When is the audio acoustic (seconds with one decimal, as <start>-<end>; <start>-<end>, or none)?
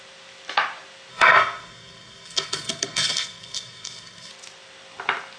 0.0-1.1; 4.3-5.4